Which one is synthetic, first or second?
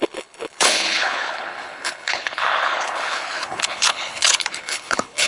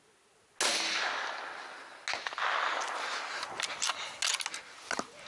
first